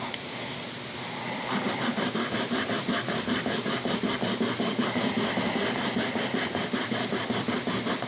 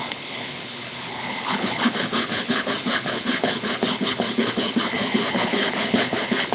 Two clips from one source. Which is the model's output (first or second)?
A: second